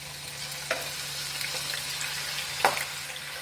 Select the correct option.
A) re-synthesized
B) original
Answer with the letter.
B